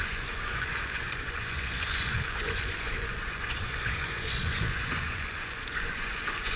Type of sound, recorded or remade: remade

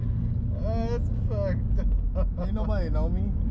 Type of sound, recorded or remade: recorded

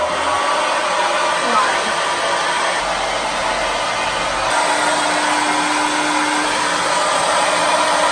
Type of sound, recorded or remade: recorded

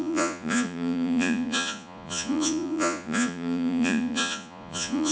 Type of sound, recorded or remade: remade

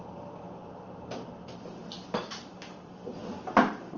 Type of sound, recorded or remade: recorded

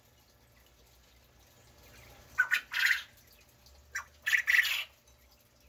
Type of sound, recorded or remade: recorded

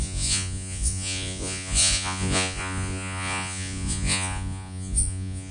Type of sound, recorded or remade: remade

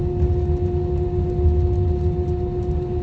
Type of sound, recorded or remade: recorded